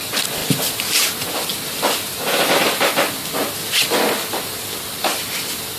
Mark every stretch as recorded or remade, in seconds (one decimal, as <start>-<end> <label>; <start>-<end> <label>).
0.0-5.8 recorded